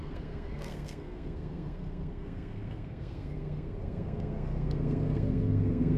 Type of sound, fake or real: fake